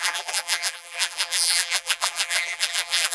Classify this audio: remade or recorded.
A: remade